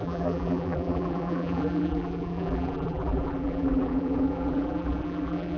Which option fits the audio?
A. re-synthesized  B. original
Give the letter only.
A